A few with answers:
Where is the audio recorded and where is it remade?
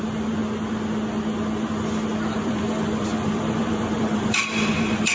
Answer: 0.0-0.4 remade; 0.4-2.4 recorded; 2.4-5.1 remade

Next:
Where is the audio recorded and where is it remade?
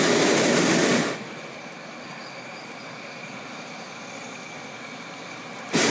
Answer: 0.0-5.9 recorded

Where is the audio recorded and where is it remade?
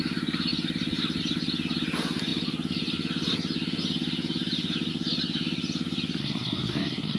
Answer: 0.0-6.2 recorded; 6.2-7.2 remade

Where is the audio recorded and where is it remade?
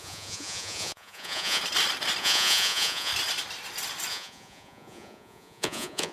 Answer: 0.0-1.6 remade; 1.6-2.2 recorded; 2.2-3.1 remade; 3.1-4.1 recorded; 4.1-6.1 remade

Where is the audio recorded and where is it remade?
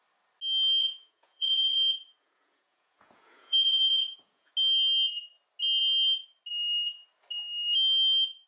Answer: 0.0-0.8 recorded; 0.8-4.5 remade; 4.5-8.5 recorded